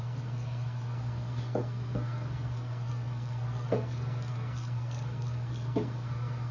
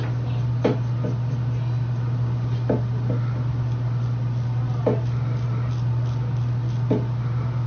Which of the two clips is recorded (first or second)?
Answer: second